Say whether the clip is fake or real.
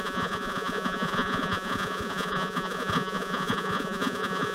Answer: fake